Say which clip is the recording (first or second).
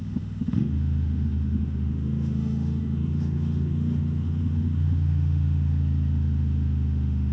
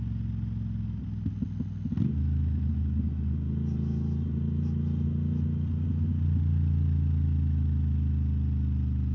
second